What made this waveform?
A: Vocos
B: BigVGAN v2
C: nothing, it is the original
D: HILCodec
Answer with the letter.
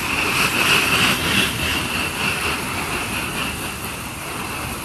C